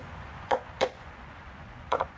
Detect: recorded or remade remade